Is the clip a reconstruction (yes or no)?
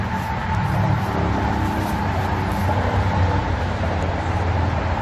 no